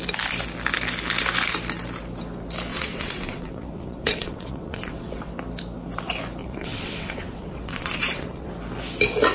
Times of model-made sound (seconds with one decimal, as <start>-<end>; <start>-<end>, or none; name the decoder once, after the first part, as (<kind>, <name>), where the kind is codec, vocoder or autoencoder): 2.7-5.3 (vocoder, WaveNeXt); 6.4-8.5